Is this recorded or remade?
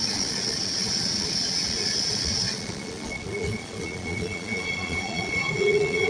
remade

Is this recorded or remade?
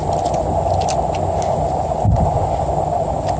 recorded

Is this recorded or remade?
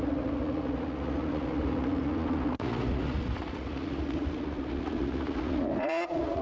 remade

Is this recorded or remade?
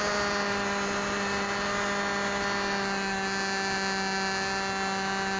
recorded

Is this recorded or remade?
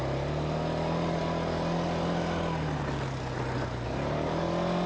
recorded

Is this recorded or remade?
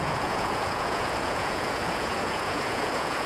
remade